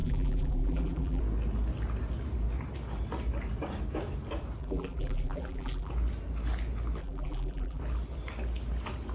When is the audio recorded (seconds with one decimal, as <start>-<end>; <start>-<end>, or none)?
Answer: 1.2-4.6; 5.9-7.0; 7.8-9.1